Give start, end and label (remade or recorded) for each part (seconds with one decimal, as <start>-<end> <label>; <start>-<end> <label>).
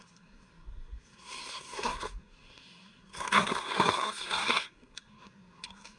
0.0-6.0 remade